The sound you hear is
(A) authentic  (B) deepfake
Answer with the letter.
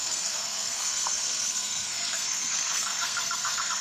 B